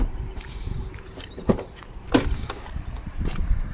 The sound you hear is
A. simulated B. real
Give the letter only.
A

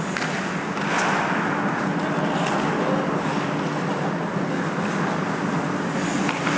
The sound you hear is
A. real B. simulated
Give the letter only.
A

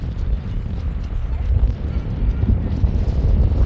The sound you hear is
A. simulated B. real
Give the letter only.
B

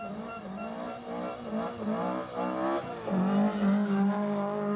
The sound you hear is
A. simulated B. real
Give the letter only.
B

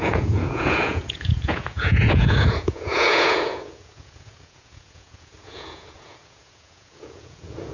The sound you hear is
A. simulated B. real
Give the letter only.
A